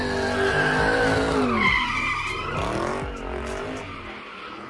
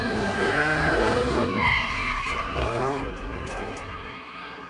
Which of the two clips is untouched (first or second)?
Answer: first